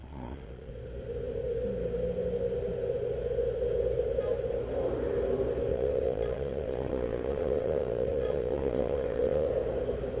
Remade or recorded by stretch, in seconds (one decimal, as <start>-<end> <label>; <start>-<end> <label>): 0.0-0.7 remade; 0.7-5.7 recorded; 5.7-9.5 remade; 9.5-10.2 recorded